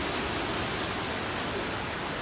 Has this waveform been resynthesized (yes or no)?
no